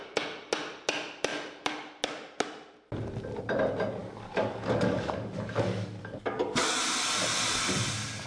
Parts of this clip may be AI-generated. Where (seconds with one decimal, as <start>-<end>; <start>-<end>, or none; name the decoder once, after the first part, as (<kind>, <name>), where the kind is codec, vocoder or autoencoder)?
4.0-6.8 (codec, DAC)